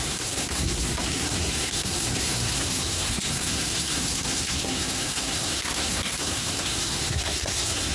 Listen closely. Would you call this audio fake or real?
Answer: fake